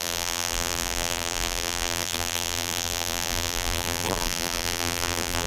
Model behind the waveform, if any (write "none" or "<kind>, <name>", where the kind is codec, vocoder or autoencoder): vocoder, BigVGAN v2